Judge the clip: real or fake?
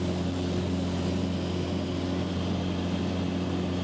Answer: real